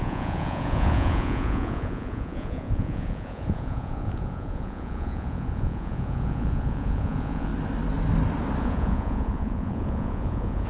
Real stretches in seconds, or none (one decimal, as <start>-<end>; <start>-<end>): 7.5-8.6